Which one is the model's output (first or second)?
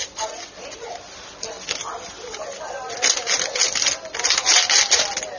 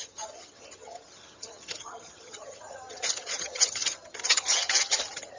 second